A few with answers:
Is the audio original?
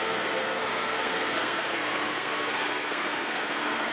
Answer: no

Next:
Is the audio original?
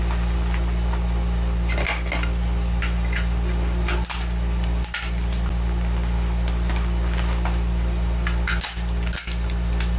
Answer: yes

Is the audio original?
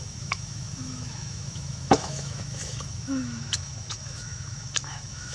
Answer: no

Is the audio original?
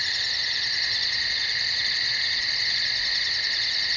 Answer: yes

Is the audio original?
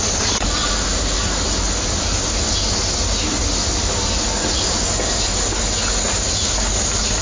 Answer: yes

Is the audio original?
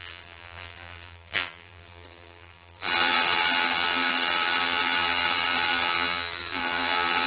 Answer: no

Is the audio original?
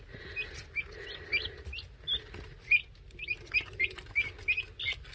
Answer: yes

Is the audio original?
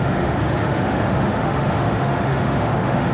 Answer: no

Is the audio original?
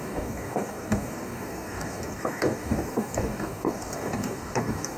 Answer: no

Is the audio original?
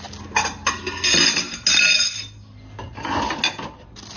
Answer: yes